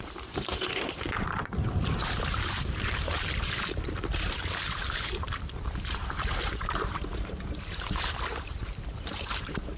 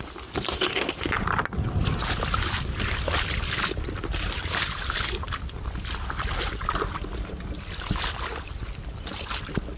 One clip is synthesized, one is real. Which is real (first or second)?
second